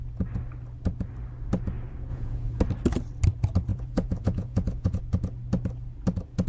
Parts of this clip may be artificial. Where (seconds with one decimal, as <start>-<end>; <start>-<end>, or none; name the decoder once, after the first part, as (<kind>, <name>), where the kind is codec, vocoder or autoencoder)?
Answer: 2.1-2.6 (vocoder, Vocos); 3.7-5.0